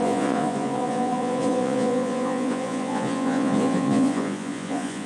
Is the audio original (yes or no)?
no